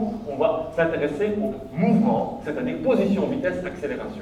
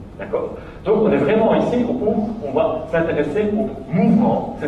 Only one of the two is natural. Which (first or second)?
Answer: first